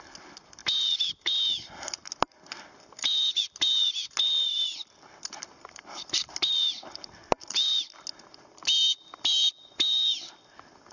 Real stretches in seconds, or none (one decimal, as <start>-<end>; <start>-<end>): 0.0-10.9